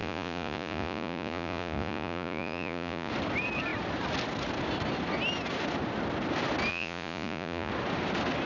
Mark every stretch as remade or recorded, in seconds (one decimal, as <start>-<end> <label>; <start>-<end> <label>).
0.0-3.1 remade; 3.1-6.7 recorded; 6.7-7.7 remade; 7.7-8.5 recorded